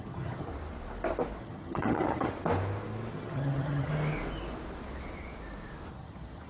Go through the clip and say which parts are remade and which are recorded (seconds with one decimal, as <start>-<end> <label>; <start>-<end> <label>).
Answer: 0.0-0.5 remade; 0.5-1.4 recorded; 1.4-2.3 remade; 2.3-3.1 recorded; 3.1-3.9 remade; 3.9-5.9 recorded; 5.9-6.5 remade